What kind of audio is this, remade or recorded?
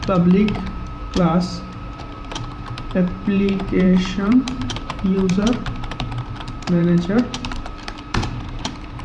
remade